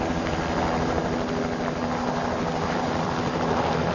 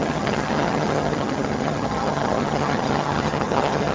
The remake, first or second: second